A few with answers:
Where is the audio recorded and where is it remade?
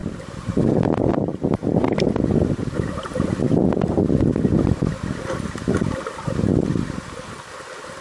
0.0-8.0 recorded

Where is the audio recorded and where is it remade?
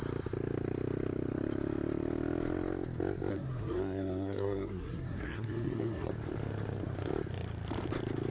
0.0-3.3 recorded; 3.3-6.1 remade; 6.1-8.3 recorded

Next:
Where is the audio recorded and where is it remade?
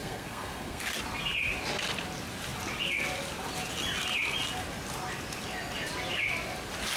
0.0-0.8 remade; 0.8-7.0 recorded